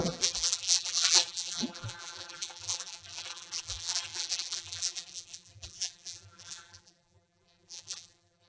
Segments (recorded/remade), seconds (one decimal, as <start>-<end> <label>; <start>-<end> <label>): 0.0-8.5 remade